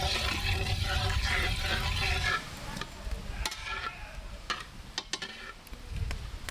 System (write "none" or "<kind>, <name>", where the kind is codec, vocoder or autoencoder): none